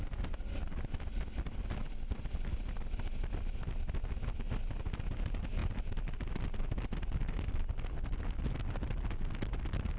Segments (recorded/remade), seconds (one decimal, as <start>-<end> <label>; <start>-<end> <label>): 0.0-10.0 recorded